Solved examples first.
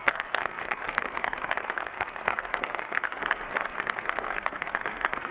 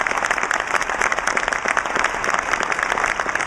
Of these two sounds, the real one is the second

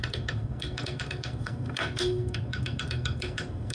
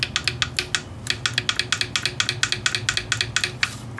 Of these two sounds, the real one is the second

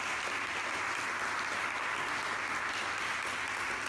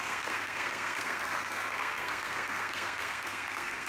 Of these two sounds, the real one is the first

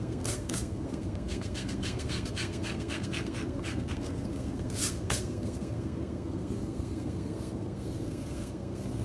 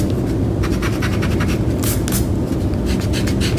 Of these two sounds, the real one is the second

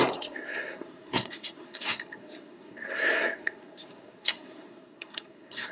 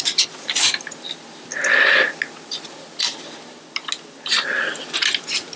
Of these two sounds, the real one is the second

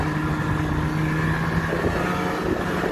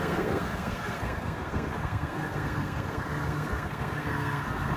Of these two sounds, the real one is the first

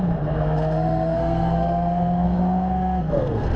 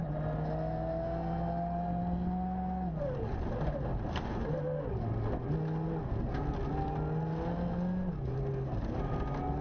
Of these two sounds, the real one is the second